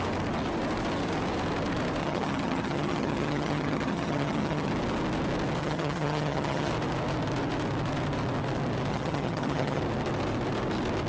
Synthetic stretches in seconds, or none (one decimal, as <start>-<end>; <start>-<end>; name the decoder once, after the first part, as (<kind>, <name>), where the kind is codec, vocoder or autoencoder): 2.0-4.7 (vocoder, HiFi-GAN); 5.6-6.7; 8.9-9.8